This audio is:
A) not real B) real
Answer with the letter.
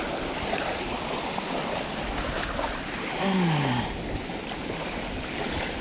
B